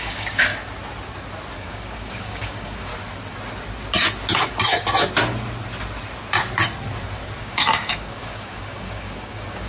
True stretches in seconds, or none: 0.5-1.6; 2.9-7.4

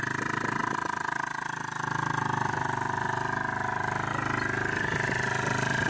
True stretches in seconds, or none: 0.0-5.9

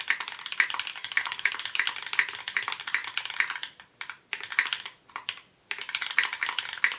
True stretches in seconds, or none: 0.0-0.9; 1.5-7.0

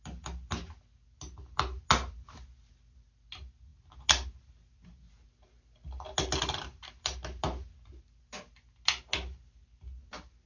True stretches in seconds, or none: 0.0-10.5

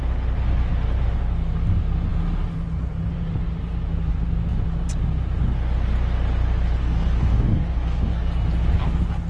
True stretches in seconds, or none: 0.0-6.8; 8.2-9.3